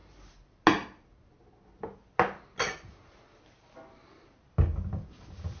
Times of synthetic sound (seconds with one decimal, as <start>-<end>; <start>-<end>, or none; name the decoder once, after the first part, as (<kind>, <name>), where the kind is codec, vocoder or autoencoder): none